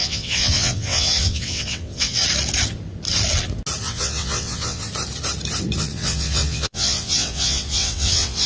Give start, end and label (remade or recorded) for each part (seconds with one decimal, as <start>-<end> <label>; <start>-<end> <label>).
0.0-2.2 remade; 2.2-3.8 recorded; 3.8-4.9 remade; 4.9-5.8 recorded; 5.8-8.5 remade